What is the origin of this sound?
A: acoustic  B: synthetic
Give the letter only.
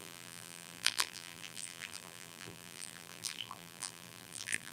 B